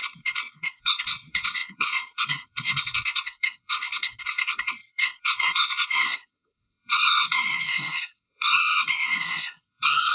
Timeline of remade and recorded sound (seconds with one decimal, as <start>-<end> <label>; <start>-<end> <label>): 0.0-10.1 remade